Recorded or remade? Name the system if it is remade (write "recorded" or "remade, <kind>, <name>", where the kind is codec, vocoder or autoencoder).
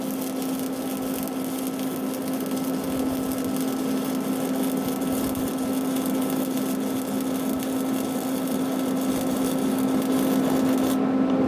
recorded